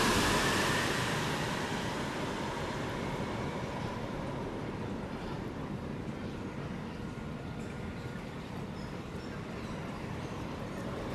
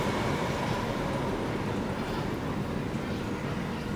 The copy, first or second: first